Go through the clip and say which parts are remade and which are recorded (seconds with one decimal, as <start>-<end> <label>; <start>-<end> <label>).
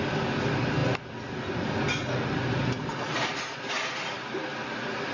0.0-5.1 recorded